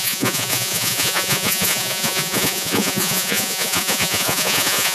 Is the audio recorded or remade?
remade